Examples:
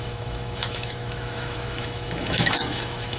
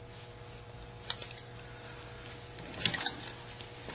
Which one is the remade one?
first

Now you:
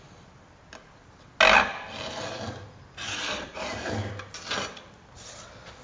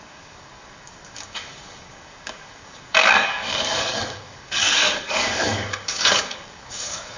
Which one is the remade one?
second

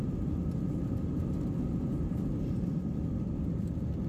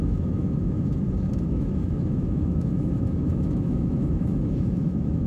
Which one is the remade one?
second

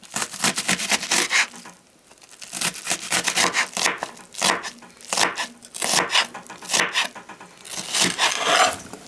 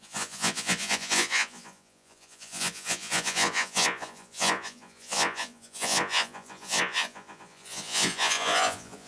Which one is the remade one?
second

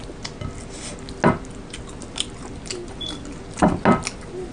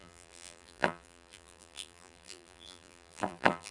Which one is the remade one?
second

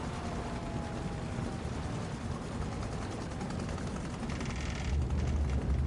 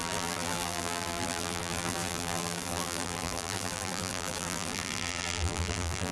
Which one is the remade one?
second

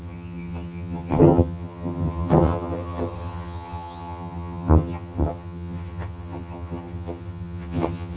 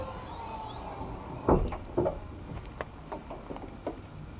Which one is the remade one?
first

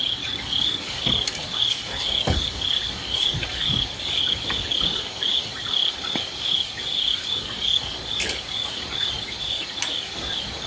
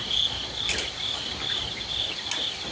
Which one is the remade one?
first